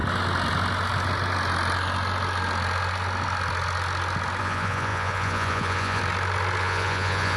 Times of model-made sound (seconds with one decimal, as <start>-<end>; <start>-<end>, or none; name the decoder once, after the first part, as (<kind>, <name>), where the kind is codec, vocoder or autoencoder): 4.4-6.0 (vocoder, Vocos); 6.6-7.4